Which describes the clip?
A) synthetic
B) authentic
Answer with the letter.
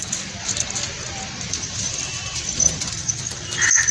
A